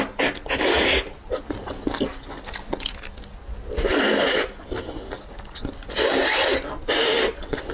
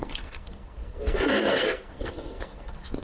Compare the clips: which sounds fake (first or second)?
second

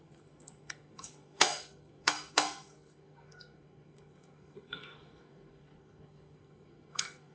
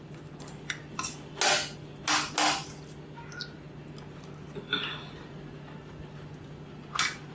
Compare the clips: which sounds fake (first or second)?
first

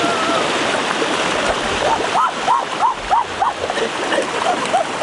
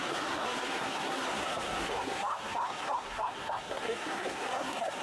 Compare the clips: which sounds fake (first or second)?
second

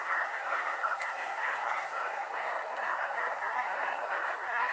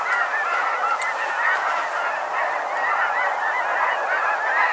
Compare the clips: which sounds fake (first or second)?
first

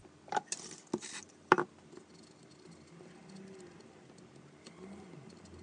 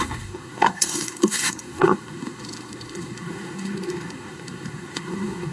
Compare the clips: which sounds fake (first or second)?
second